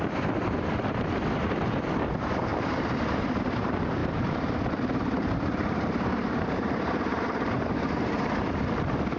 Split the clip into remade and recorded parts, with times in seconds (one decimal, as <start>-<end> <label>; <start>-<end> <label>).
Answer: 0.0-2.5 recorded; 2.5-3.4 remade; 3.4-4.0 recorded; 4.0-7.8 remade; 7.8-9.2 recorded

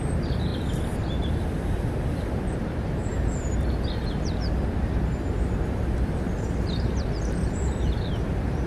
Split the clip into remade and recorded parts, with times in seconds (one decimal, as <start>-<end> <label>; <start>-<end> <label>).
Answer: 0.0-0.5 remade; 0.5-1.8 recorded; 1.8-8.7 remade

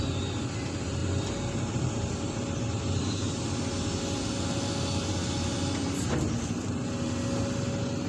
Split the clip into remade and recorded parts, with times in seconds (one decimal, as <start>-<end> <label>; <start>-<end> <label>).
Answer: 0.0-8.1 recorded

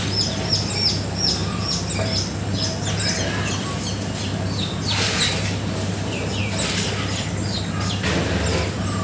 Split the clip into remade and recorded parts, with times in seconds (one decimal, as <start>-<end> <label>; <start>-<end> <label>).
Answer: 0.0-9.0 recorded

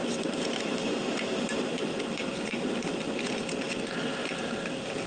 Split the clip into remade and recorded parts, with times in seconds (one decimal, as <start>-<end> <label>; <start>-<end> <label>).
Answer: 0.0-3.1 remade; 3.1-4.2 recorded; 4.2-5.1 remade

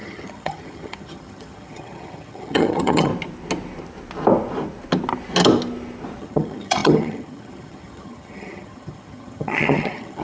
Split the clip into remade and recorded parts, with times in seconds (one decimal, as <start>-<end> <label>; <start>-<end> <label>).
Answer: 0.0-3.1 remade; 3.1-6.2 recorded; 6.2-10.2 remade